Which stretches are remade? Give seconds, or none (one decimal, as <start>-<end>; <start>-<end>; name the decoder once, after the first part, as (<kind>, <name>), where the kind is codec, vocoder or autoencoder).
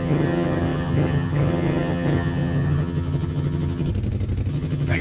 0.0-3.9 (vocoder, HiFi-GAN); 4.5-5.0